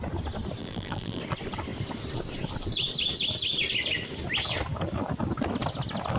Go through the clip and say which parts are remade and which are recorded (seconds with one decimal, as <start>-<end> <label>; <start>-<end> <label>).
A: 0.0-0.6 recorded; 0.6-1.2 remade; 1.2-6.2 recorded